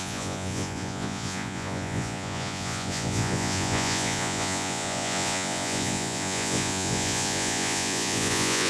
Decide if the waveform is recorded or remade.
remade